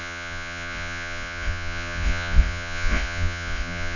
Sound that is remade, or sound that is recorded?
remade